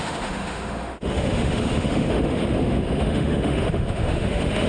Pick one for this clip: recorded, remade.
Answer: remade